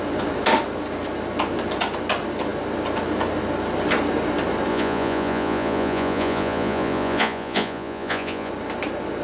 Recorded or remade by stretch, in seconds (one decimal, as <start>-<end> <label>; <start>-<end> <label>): 0.0-4.7 recorded; 4.7-8.5 remade; 8.5-9.2 recorded